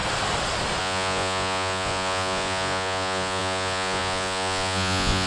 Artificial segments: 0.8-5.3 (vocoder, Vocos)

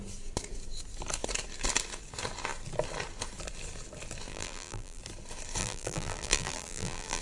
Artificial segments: 4.3-5.0 (vocoder, BigVGAN v2); 5.6-7.2

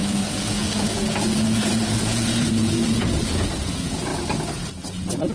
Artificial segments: 0.0-4.1 (vocoder, Vocos)

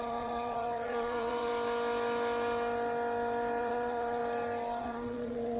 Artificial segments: 0.0-1.5 (vocoder, WaveNeXt); 3.6-4.2; 4.8-5.6

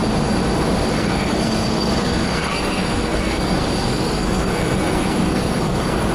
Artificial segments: 0.9-6.1 (codec, SNAC)

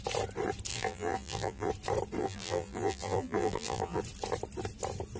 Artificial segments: 0.7-1.7 (vocoder, BigVGAN v2); 2.2-4.0